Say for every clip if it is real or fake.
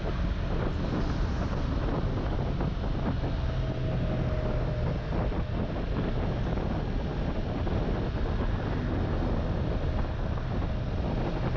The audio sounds real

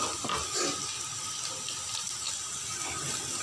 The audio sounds real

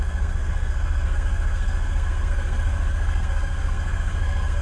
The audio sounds fake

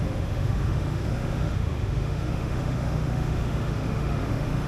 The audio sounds fake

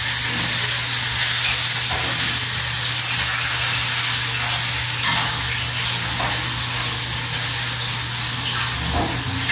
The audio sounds real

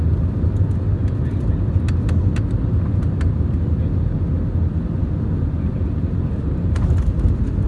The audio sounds real